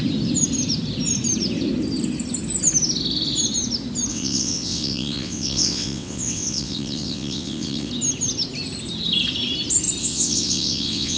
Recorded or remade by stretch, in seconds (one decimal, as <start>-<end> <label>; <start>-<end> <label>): 0.0-4.1 recorded; 4.1-7.9 remade; 7.9-10.0 recorded; 10.0-11.2 remade